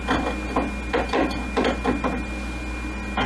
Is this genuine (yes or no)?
yes